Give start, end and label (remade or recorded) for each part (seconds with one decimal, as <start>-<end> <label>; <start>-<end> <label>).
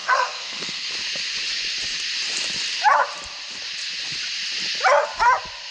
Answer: 0.0-0.9 remade; 0.9-5.7 recorded